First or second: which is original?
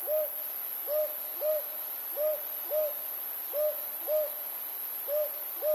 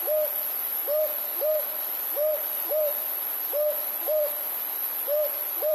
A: first